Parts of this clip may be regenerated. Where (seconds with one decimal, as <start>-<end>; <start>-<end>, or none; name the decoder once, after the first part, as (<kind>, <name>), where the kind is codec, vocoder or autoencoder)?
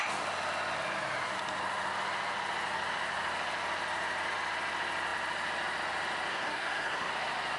6.3-7.1 (codec, SNAC)